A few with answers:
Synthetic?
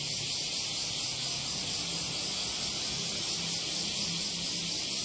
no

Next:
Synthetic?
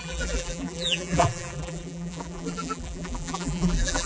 yes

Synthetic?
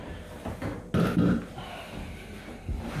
no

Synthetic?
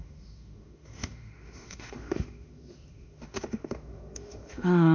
yes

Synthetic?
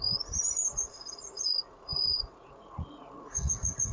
yes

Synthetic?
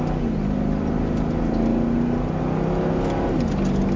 no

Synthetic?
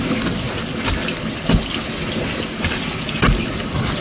no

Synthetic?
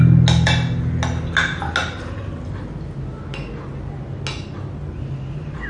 no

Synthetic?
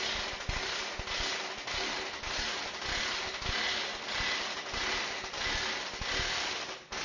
no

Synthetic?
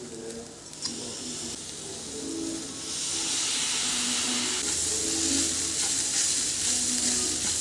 no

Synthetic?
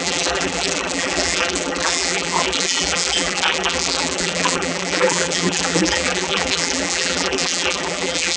yes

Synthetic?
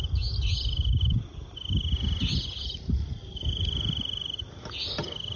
no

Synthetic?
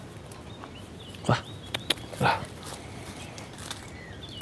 yes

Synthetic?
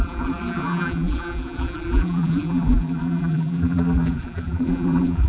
yes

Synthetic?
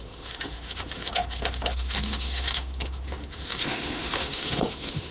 yes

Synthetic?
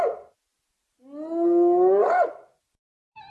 no